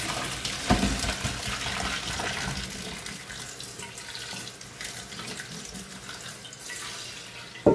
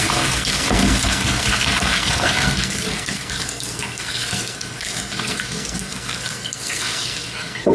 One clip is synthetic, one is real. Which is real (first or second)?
first